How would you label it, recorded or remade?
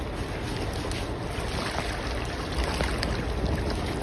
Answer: recorded